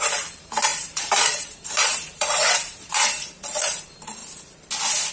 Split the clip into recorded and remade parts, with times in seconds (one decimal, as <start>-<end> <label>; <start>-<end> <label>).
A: 0.0-4.2 remade; 4.2-5.1 recorded